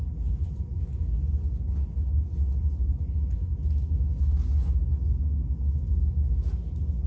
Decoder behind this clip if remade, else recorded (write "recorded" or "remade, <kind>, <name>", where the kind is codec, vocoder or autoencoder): recorded